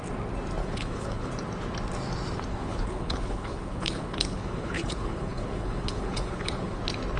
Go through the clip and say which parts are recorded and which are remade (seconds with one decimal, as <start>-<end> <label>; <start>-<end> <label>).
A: 0.0-0.6 recorded; 0.6-1.3 remade; 1.3-2.5 recorded; 2.5-6.8 remade; 6.8-7.2 recorded